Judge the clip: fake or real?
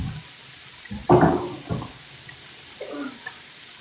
real